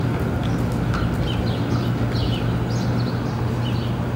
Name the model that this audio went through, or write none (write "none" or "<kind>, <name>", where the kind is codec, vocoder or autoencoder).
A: none